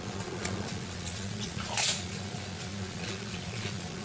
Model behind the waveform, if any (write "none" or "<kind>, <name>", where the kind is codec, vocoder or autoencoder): vocoder, Vocos